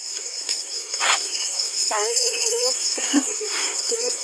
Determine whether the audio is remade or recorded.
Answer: remade